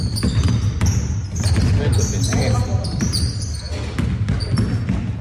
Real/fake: real